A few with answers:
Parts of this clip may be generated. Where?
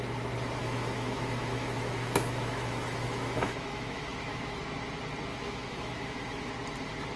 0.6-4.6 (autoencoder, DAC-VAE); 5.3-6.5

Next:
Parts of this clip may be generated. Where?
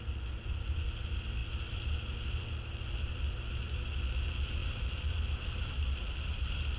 none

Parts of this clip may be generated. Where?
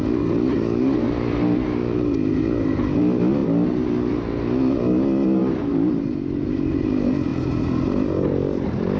none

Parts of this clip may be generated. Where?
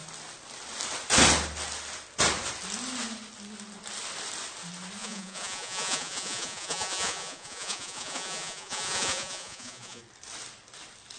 5.0-10.0 (vocoder, Vocos)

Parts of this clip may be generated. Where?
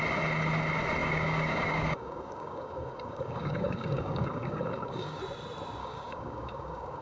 1.0-5.2 (codec, DAC); 5.8-7.0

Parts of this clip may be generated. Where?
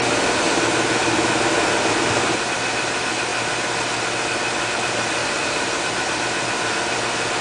5.2-5.9 (vocoder, BigVGAN v2)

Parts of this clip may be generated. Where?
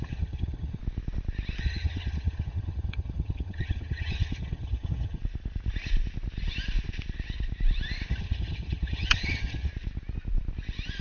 0.0-0.8 (vocoder, HiFi-GAN); 1.6-5.2; 8.1-9.7